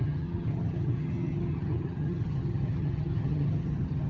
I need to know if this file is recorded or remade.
remade